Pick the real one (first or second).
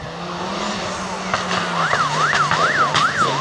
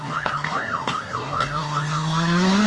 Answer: first